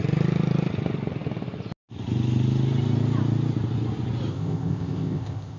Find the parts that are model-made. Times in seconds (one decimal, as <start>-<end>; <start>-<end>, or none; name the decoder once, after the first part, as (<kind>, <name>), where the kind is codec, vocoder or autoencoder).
4.3-5.6 (codec, ZipCodec)